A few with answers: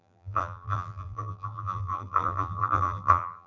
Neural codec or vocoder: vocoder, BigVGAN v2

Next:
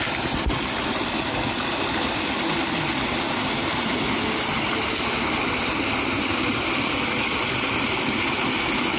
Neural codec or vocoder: none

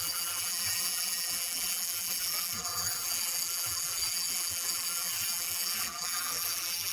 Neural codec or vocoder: vocoder, BigVGAN v2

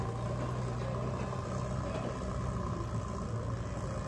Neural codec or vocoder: none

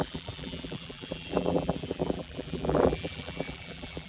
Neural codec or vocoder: vocoder, BigVGAN v2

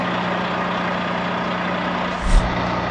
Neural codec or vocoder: none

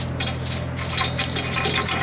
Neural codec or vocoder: none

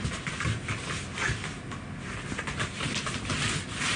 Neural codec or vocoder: none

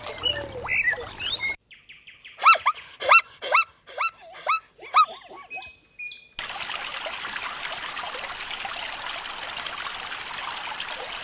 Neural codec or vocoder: none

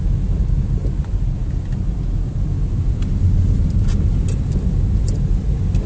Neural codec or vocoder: vocoder, BigVGAN v2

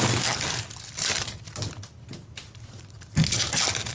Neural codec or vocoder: none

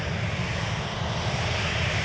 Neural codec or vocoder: none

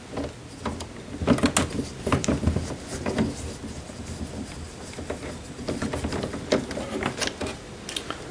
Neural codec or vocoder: none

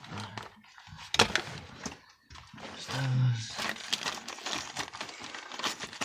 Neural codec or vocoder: none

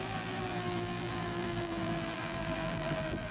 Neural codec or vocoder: vocoder, BigVGAN v2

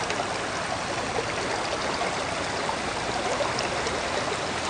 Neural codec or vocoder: none